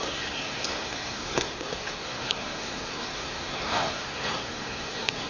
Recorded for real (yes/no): no